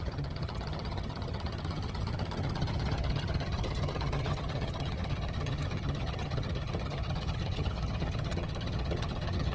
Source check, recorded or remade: remade